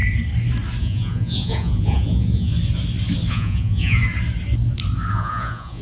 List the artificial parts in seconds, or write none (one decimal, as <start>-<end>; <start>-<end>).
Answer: 0.8-2.5; 3.3-4.0; 5.1-5.8